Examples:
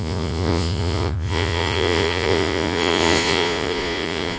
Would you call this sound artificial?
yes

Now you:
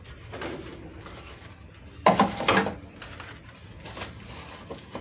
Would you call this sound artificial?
no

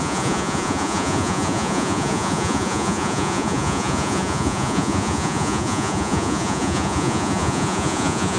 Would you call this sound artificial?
yes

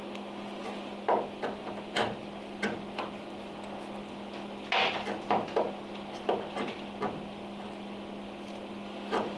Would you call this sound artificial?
no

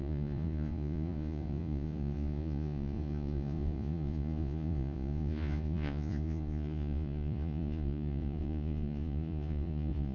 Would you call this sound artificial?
yes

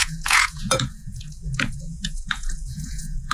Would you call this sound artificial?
yes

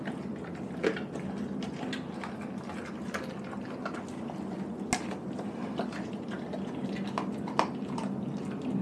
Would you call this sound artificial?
no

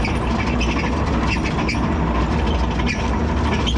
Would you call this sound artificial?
no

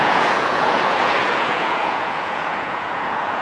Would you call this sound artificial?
yes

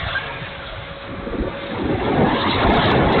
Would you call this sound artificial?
no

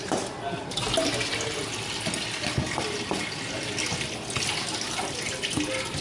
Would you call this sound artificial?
no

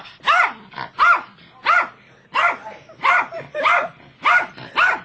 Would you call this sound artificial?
no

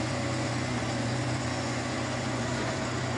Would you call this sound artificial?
yes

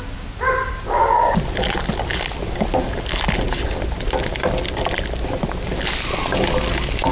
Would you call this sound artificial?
no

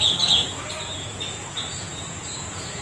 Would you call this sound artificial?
yes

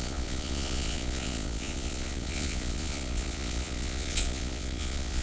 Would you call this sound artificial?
yes